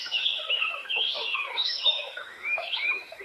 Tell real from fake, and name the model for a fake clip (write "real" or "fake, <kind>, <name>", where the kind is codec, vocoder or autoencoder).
fake, autoencoder, DAC-VAE